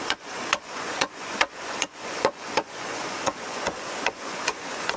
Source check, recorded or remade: remade